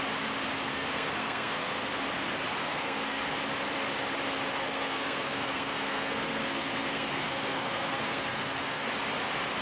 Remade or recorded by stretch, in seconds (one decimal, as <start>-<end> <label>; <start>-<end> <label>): 0.0-0.7 recorded; 0.7-1.9 remade; 1.9-2.6 recorded; 2.6-3.2 remade; 3.2-4.6 recorded; 4.6-8.9 remade; 8.9-9.6 recorded